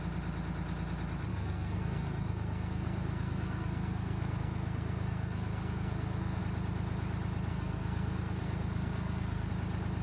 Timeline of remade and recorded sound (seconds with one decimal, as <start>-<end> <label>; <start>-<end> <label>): 0.0-1.3 recorded; 1.3-6.4 remade; 6.4-7.5 recorded; 7.5-9.5 remade; 9.5-10.0 recorded